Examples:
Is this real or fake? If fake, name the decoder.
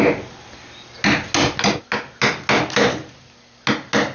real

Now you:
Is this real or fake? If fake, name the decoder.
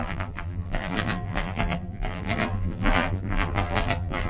fake, vocoder, BigVGAN v2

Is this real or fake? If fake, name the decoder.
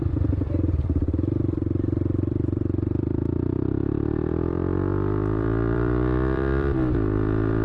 fake, vocoder, BigVGAN v2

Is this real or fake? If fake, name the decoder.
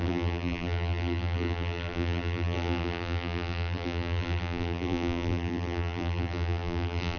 fake, vocoder, BigVGAN v2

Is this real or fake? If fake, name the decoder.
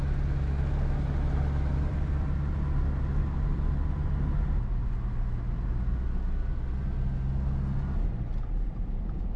real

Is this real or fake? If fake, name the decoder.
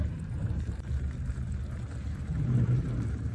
fake, vocoder, BigVGAN v2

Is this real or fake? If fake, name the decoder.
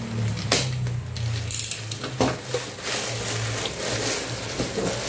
real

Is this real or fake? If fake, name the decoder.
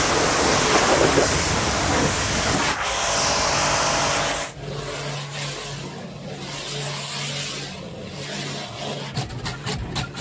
real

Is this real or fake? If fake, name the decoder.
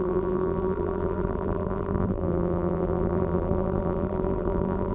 fake, vocoder, BigVGAN v2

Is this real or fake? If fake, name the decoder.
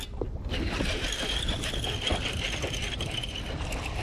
real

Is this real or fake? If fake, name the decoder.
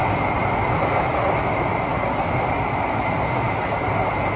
real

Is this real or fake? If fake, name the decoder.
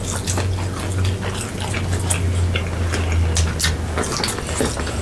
real